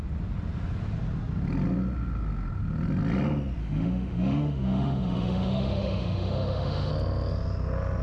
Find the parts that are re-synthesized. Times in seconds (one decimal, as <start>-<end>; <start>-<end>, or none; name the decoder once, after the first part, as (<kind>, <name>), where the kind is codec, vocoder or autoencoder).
3.6-6.9 (autoencoder, DAC-VAE)